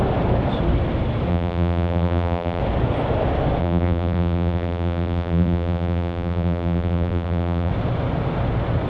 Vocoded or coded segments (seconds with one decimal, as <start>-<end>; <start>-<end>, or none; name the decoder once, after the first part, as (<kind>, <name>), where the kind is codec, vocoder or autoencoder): 1.3-2.6 (vocoder, BigVGAN v2); 3.6-7.7